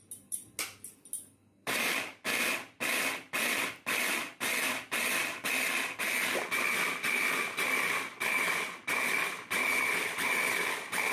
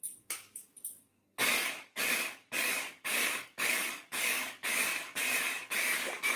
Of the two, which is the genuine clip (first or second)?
first